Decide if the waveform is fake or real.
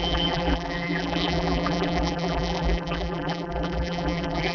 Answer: fake